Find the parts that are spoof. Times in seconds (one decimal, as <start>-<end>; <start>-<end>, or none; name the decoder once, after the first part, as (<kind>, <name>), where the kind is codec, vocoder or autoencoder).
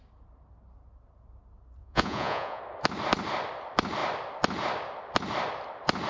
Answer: 1.8-2.6 (vocoder, Vocos)